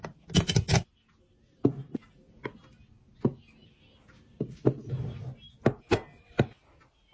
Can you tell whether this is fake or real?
real